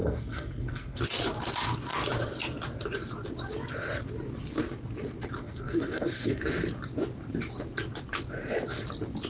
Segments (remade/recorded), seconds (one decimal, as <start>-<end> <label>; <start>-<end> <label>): 0.0-1.0 remade; 1.0-5.4 recorded; 5.4-6.4 remade; 6.4-9.3 recorded